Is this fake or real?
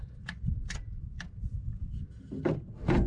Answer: real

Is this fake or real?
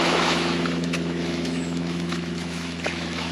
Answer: fake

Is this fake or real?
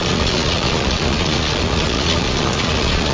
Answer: fake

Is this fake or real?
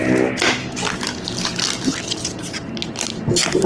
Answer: real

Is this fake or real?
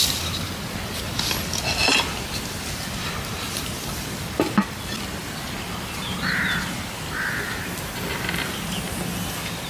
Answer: real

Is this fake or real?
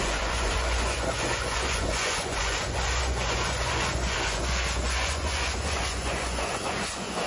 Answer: fake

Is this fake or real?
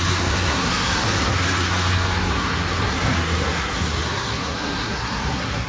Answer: fake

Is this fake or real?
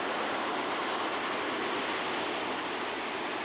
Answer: real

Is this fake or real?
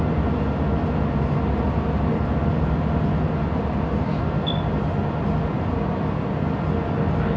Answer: real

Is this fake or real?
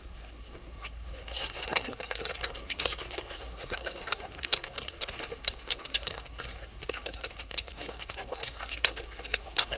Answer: fake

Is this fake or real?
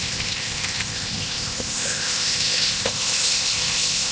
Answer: fake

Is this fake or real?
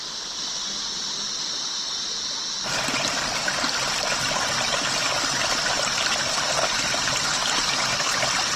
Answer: real